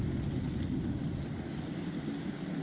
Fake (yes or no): no